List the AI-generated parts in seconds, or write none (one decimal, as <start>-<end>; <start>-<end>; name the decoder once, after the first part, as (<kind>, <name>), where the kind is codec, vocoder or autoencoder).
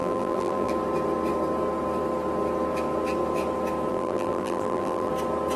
0.0-0.7 (vocoder, BigVGAN v2); 3.9-5.1